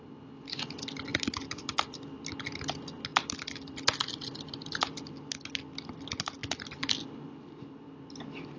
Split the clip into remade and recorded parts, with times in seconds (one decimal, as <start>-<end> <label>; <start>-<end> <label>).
0.0-1.1 recorded; 1.1-2.2 remade; 2.2-3.1 recorded; 3.1-3.8 remade; 3.8-6.4 recorded; 6.4-8.0 remade; 8.0-8.6 recorded